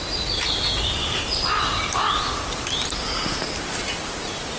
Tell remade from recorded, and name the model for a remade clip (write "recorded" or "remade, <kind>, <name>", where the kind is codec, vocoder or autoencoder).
recorded